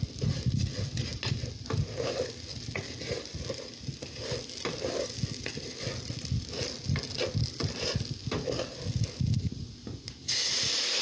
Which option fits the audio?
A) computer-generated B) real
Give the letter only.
B